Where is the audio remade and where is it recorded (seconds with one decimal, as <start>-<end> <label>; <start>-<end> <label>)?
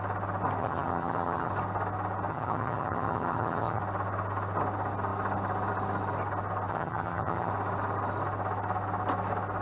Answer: 0.0-0.6 recorded; 0.6-1.5 remade; 1.5-2.3 recorded; 2.3-3.8 remade; 3.8-6.7 recorded; 6.7-7.5 remade; 7.5-9.6 recorded